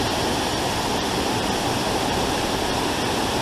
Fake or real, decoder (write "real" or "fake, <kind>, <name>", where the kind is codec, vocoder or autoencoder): real